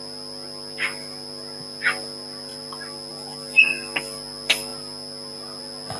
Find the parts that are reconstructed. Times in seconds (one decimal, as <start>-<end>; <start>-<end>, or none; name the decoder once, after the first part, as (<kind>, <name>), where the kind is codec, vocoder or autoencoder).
none